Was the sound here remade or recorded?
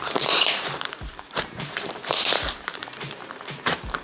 remade